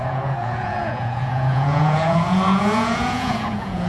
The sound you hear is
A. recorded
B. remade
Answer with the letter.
B